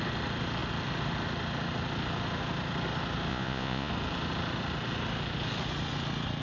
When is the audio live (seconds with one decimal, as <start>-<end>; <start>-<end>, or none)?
0.0-3.3; 3.9-6.4